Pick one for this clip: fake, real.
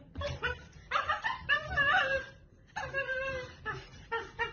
fake